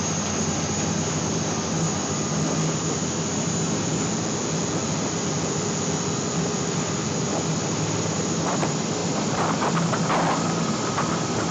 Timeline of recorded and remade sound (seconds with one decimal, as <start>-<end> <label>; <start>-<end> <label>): 0.0-3.9 recorded; 3.9-7.5 remade; 7.5-11.5 recorded